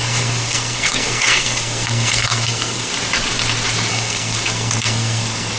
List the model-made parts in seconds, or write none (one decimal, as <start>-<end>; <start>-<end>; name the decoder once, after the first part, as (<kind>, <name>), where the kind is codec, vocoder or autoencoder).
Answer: 0.0-2.9 (codec, SNAC); 3.9-5.6